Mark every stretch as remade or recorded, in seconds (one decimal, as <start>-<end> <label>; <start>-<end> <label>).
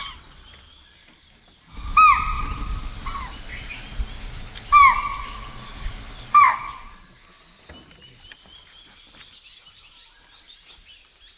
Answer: 0.0-11.4 recorded